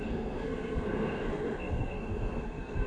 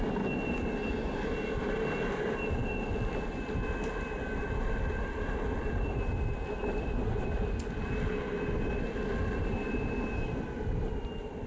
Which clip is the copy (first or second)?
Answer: first